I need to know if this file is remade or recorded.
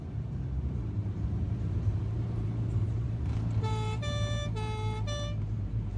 remade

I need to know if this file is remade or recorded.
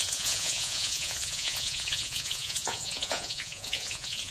remade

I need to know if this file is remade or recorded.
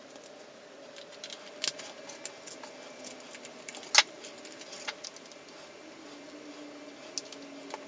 recorded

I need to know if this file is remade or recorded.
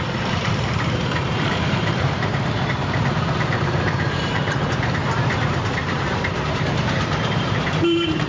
remade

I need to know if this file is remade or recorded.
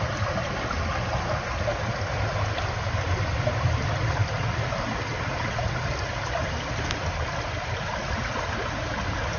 recorded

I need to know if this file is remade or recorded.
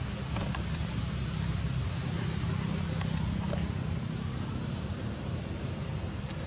recorded